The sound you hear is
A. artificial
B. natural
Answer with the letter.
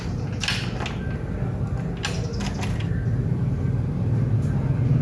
B